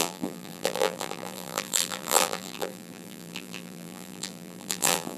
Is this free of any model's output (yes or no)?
no